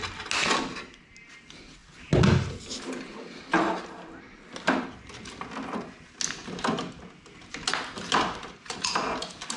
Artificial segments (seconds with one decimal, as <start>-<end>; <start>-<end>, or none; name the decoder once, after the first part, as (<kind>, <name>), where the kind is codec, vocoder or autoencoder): none